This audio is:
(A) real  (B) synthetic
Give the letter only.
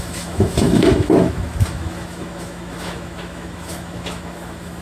B